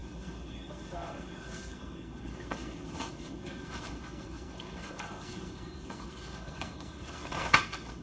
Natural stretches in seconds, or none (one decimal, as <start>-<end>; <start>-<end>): none